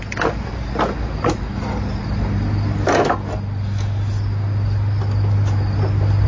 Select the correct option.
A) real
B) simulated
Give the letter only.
A